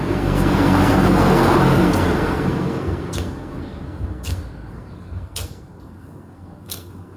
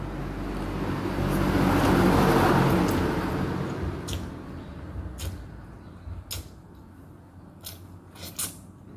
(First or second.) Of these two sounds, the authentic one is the second